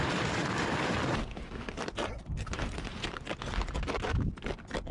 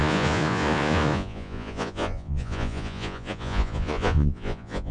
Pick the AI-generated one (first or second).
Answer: second